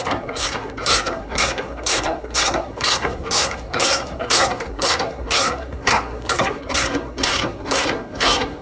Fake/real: fake